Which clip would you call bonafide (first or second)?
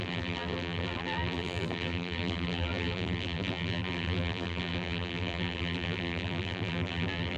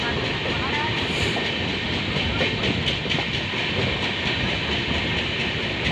second